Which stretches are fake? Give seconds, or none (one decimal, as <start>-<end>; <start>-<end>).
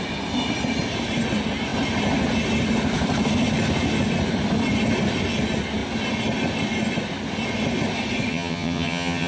8.3-9.3